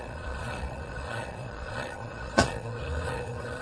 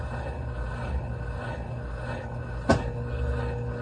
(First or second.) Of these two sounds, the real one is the second